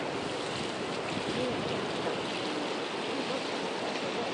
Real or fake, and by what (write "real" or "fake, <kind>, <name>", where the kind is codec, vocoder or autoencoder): real